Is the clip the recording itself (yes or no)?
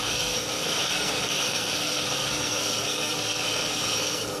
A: no